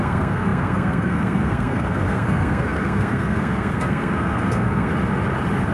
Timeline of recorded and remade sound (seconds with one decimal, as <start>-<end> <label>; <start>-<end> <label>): 0.0-4.9 remade; 4.9-5.7 recorded